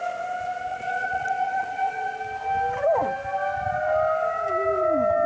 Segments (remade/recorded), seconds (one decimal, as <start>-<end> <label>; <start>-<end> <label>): 0.0-0.7 recorded; 0.7-2.2 remade; 2.2-5.3 recorded